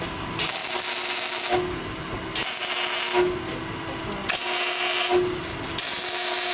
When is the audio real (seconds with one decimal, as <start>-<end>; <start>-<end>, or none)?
0.0-6.5